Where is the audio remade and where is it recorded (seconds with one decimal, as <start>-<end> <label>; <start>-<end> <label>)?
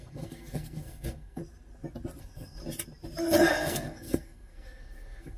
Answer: 0.0-1.4 remade; 1.4-2.2 recorded; 2.2-2.6 remade; 2.6-3.5 recorded; 3.5-5.4 remade